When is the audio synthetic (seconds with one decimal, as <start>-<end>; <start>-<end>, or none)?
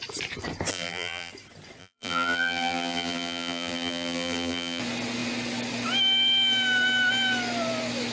0.7-1.3; 1.8-4.8